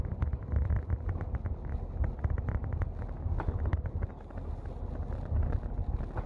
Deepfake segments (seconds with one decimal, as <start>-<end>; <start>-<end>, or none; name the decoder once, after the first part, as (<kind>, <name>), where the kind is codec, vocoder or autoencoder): none